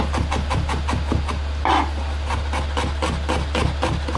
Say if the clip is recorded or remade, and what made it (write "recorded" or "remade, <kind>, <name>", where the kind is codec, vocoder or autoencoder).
recorded